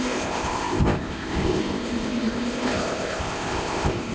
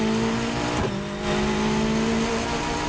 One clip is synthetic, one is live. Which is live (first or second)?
second